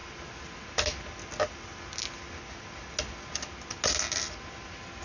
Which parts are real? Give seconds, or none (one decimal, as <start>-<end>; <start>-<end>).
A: 0.0-5.0